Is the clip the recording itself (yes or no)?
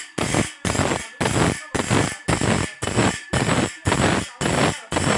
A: yes